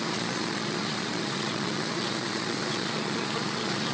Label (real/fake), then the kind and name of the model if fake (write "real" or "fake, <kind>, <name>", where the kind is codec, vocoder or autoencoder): fake, vocoder, Vocos